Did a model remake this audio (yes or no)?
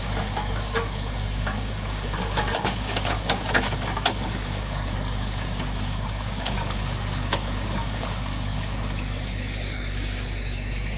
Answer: yes